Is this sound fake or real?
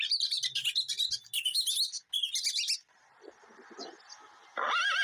real